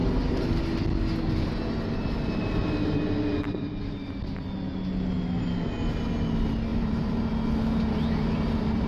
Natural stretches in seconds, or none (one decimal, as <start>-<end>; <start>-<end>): 0.0-2.4; 4.1-6.7; 7.3-8.9